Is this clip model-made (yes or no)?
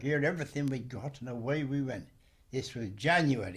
no